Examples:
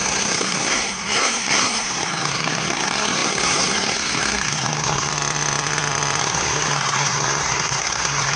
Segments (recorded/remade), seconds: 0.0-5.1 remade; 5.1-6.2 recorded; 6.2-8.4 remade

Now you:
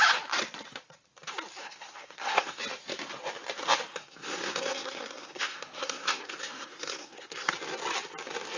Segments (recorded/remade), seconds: 0.0-1.6 recorded; 1.6-2.6 remade; 2.6-3.9 recorded; 3.9-7.5 remade; 7.5-8.6 recorded

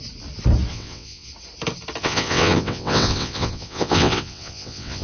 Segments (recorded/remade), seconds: 0.0-0.7 recorded; 0.7-1.3 remade; 1.3-2.0 recorded; 2.0-5.0 remade

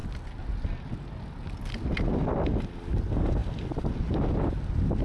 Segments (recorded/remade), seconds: 0.0-5.0 recorded

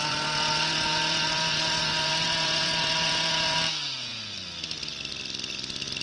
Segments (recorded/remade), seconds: 0.0-3.6 remade; 3.6-6.0 recorded

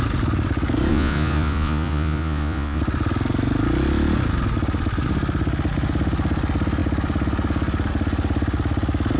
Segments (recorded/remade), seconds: 0.0-0.9 recorded; 0.9-2.8 remade; 2.8-9.2 recorded

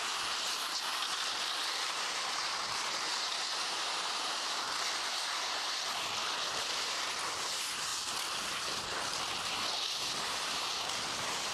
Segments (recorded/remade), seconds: 0.0-11.5 recorded

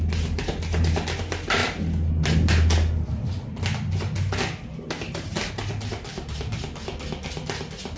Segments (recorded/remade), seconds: 0.0-8.0 recorded